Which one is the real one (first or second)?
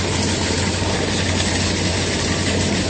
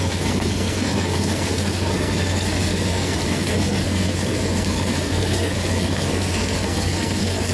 first